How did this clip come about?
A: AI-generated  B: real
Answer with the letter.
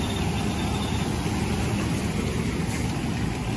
B